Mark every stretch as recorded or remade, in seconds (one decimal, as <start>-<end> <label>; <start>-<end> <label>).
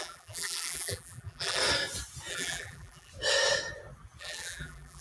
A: 0.0-1.6 remade; 1.6-2.3 recorded; 2.3-3.1 remade; 3.1-4.2 recorded; 4.2-5.0 remade